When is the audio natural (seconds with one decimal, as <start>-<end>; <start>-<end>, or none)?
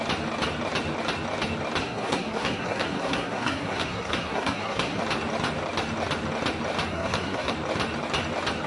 0.0-1.8; 5.0-6.9; 7.5-8.7